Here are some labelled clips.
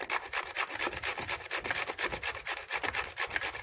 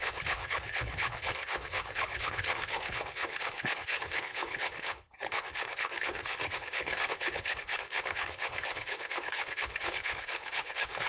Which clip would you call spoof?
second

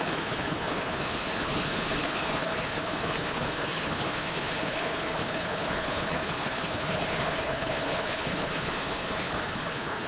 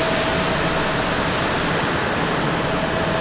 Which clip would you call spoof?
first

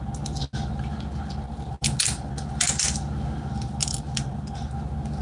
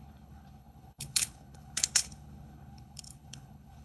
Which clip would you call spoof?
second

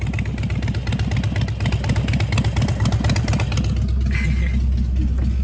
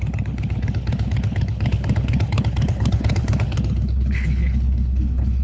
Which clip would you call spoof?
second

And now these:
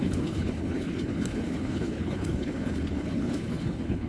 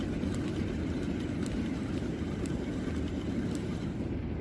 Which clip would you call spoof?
first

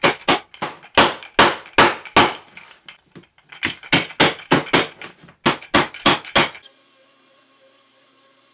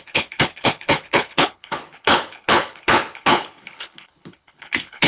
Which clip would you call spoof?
second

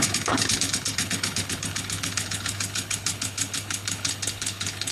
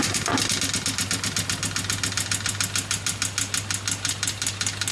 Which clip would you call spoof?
first